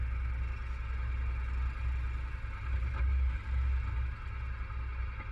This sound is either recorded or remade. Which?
recorded